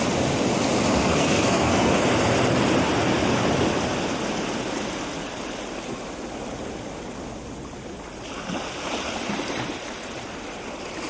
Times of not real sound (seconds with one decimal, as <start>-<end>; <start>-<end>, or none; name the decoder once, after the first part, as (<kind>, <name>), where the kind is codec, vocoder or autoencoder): 1.1-1.9 (codec, SNAC)